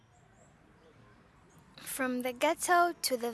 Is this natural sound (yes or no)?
yes